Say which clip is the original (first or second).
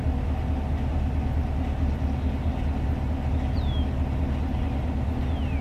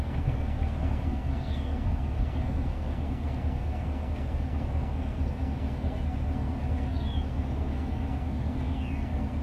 first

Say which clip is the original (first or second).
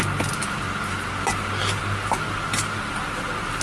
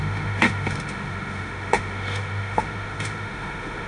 first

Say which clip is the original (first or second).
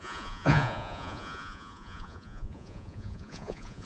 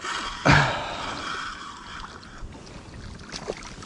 second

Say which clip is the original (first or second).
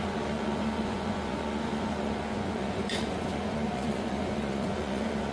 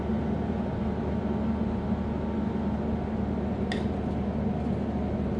second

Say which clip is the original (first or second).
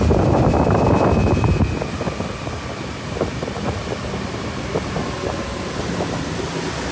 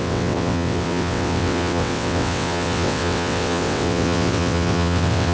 first